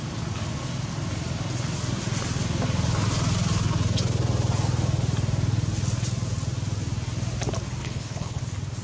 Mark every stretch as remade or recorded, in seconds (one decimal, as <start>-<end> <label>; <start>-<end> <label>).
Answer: 0.0-7.8 recorded; 7.8-8.4 remade; 8.4-8.8 recorded